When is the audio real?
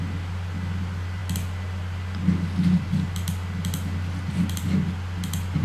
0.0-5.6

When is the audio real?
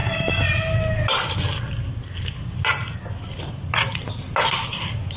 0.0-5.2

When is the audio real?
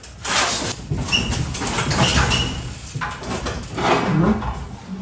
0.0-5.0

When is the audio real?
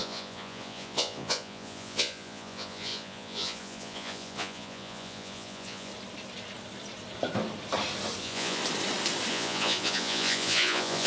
5.9-8.2; 8.6-9.3